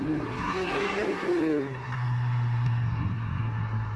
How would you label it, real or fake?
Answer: fake